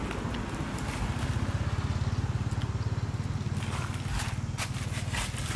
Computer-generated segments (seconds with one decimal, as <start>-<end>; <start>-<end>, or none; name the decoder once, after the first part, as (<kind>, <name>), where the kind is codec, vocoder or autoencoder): none